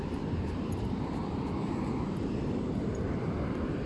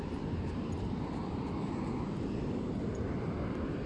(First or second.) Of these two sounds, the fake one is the first